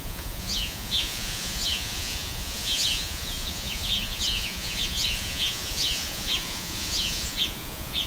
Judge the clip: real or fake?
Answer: fake